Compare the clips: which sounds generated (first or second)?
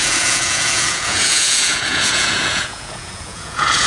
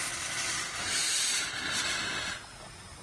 first